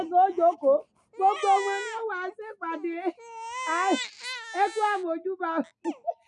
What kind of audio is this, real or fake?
real